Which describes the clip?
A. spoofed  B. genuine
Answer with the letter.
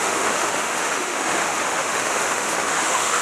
A